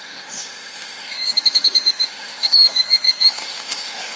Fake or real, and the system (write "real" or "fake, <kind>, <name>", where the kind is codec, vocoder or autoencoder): fake, autoencoder, DAC-VAE